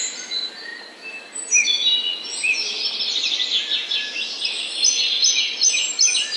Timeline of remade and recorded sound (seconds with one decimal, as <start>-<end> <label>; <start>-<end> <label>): 0.0-6.4 recorded